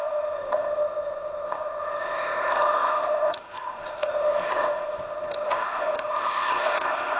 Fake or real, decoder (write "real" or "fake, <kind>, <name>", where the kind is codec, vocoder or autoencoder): fake, codec, ZipCodec